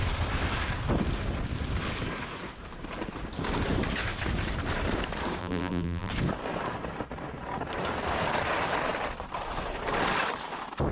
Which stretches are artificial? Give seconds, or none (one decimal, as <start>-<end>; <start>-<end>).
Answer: 5.4-6.1